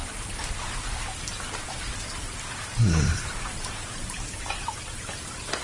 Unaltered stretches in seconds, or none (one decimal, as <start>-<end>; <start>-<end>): 0.5-1.7; 4.9-5.6